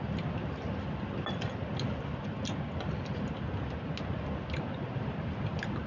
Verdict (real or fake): real